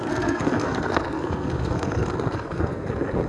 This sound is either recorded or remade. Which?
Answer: remade